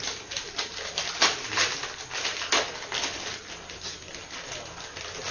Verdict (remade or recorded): recorded